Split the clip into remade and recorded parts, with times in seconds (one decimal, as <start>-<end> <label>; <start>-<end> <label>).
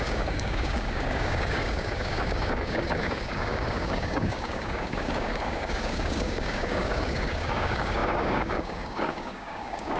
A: 0.0-10.0 remade